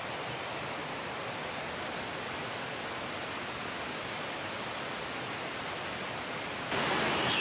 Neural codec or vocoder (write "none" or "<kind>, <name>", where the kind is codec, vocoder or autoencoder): vocoder, BigVGAN v2